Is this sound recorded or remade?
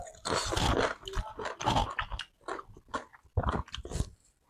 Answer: recorded